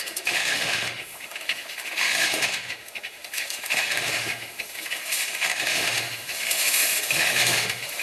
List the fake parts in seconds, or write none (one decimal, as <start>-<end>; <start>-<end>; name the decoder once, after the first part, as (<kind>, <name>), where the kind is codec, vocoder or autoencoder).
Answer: 0.0-8.0 (autoencoder, DAC-VAE)